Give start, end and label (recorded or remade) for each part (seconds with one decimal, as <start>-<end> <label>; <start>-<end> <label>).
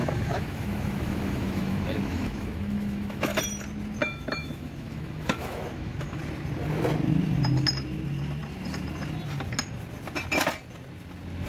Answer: 0.0-3.4 remade; 3.4-4.0 recorded; 4.0-6.2 remade; 6.2-11.5 recorded